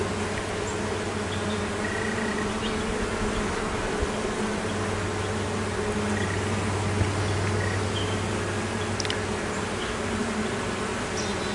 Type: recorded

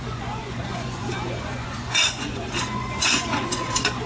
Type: remade